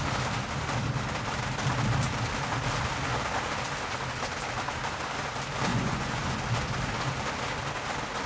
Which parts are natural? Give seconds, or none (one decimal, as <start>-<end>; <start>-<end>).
0.0-5.7; 6.4-8.3